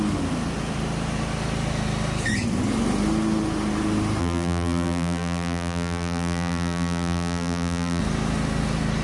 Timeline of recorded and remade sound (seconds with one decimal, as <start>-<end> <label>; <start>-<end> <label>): 0.0-4.2 recorded; 4.2-8.0 remade; 8.0-9.0 recorded